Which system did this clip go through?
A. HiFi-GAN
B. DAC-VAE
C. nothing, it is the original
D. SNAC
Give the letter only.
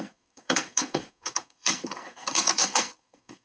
D